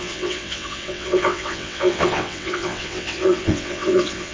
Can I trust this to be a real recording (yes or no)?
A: no